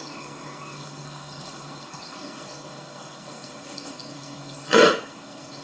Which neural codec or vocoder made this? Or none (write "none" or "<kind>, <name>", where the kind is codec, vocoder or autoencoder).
codec, SNAC